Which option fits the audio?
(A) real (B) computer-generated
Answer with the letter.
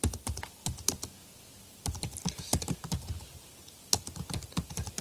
A